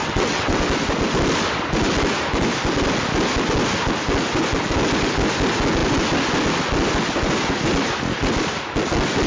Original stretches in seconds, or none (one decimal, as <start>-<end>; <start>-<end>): 0.6-9.3